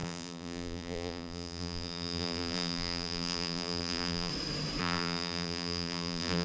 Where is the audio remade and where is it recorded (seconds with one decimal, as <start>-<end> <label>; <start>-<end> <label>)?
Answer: 0.0-4.3 remade; 4.3-4.8 recorded; 4.8-6.4 remade